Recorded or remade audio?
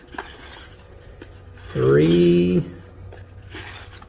recorded